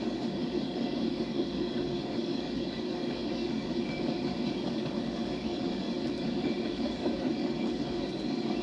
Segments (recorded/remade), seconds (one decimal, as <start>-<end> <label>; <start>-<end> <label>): 0.0-8.6 remade